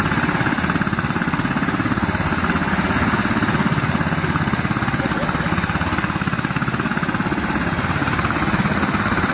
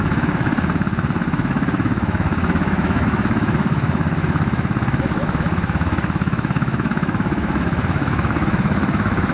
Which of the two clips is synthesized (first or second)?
second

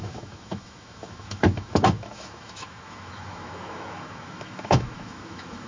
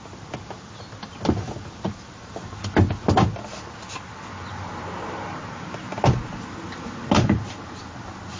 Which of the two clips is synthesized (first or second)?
first